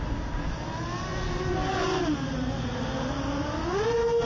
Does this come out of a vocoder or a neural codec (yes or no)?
no